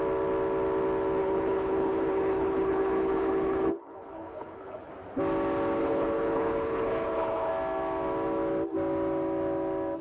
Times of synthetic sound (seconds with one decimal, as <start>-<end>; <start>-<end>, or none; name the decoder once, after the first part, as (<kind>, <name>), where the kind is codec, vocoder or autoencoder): 1.2-4.9 (codec, HILCodec); 5.8-7.5

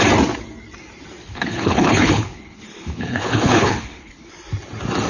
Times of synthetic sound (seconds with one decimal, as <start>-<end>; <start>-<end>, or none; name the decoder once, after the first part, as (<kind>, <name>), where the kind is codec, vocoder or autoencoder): 1.2-4.3 (codec, HILCodec)

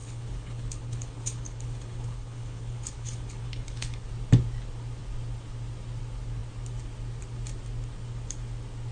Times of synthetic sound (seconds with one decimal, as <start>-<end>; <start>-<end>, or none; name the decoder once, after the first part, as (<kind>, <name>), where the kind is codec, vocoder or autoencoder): 0.0-4.1 (codec, HILCodec)